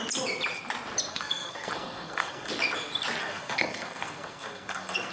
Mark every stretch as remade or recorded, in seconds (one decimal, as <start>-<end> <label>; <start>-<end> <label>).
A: 0.0-1.1 recorded; 1.1-2.5 remade; 2.5-3.2 recorded; 3.2-5.1 remade